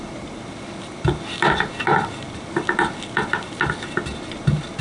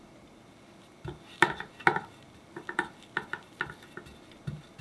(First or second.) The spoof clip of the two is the first